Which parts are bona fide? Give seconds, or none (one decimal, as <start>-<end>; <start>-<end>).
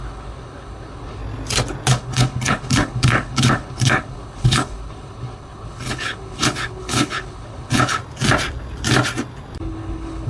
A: 1.2-1.9; 8.0-9.6